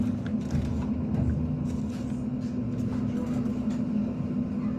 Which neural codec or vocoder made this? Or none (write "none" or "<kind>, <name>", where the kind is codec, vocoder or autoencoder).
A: none